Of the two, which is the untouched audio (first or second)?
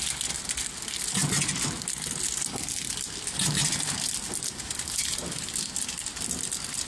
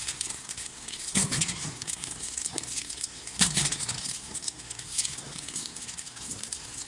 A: first